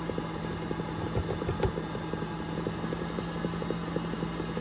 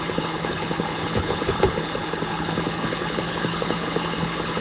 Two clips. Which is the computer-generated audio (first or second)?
second